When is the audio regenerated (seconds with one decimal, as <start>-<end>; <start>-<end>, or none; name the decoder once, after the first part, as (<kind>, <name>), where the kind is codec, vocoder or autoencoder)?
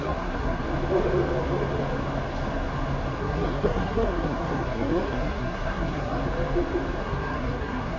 0.0-0.6 (codec, SNAC); 3.2-6.2; 7.0-8.0